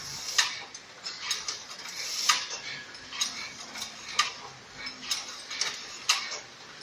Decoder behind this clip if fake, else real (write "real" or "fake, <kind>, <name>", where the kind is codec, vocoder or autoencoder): real